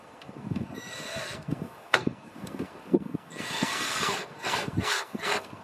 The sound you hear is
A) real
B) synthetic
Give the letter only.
B